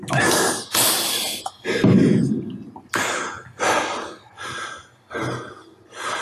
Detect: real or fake real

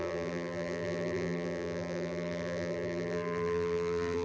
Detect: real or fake fake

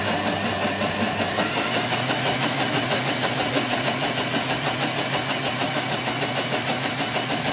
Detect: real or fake fake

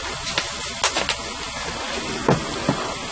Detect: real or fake real